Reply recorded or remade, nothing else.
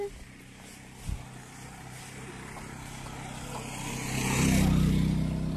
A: recorded